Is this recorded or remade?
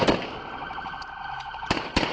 recorded